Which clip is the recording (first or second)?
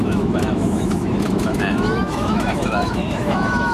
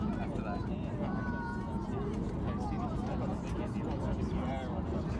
second